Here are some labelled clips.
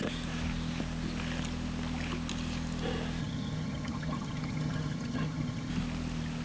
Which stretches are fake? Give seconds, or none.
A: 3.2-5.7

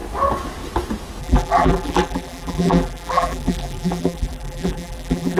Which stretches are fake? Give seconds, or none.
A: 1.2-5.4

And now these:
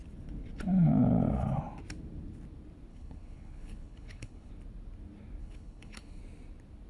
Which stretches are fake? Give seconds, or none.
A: 2.9-4.5; 5.4-6.2

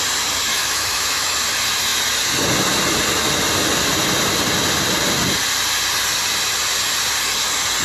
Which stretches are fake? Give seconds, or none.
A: 0.5-1.4

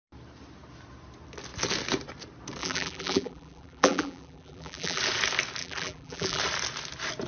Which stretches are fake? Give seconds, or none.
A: 2.6-5.0; 5.6-6.4

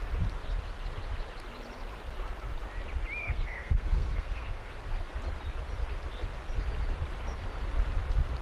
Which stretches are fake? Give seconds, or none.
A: 3.2-4.7

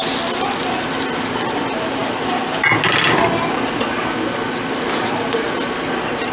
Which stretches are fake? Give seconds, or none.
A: none